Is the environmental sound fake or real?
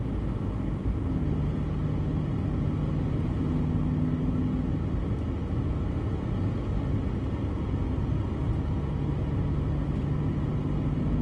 real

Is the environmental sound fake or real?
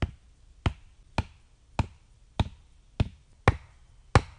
real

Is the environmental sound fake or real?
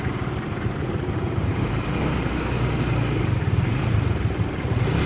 fake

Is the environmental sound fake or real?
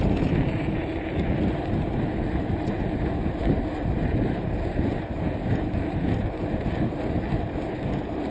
fake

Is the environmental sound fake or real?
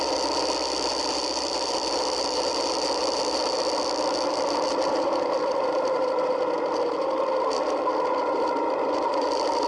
fake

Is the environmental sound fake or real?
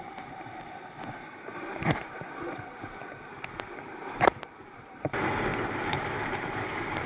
fake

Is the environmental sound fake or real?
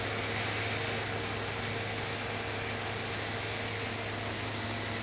real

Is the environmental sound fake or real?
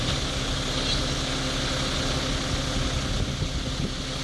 real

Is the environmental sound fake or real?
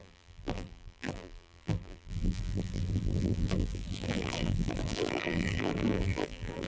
fake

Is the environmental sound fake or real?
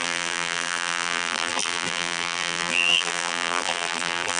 fake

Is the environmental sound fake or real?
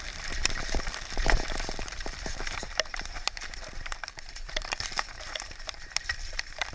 fake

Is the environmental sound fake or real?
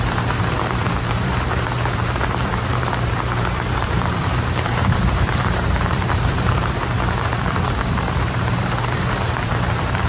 fake